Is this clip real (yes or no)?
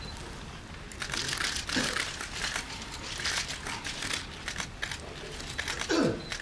yes